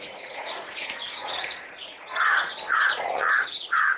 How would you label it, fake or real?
fake